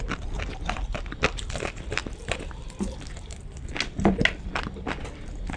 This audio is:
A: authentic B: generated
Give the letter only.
A